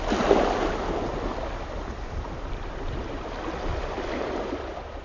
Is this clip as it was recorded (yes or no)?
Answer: no